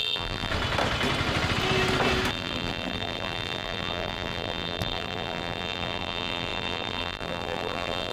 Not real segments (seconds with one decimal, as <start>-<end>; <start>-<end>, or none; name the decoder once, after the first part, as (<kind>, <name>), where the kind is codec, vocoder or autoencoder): 0.0-0.5 (vocoder, BigVGAN v2); 2.3-8.1